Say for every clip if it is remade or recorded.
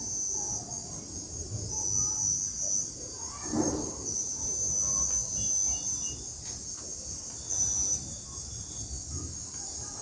recorded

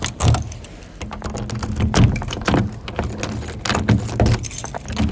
recorded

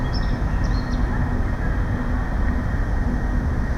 recorded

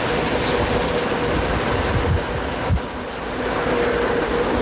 recorded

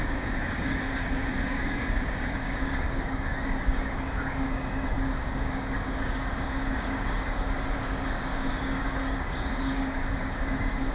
remade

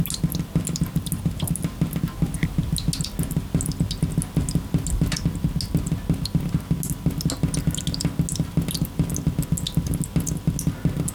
recorded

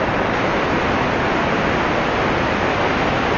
recorded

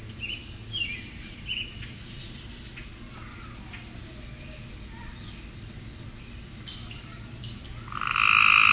recorded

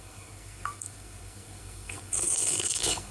remade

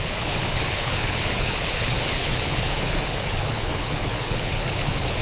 remade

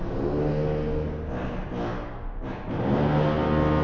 recorded